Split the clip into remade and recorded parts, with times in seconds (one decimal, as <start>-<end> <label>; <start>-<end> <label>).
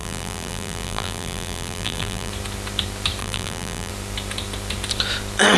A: 0.0-2.3 remade; 2.3-3.2 recorded; 3.2-3.9 remade; 3.9-5.6 recorded